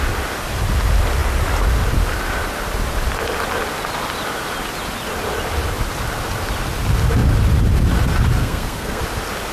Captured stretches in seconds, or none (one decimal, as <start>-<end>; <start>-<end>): 0.0-8.4; 9.0-9.5

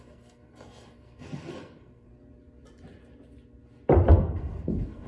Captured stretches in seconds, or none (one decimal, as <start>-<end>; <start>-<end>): 2.1-4.1

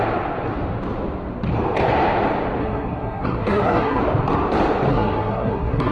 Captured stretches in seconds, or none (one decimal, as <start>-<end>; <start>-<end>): 0.0-2.6; 4.0-4.9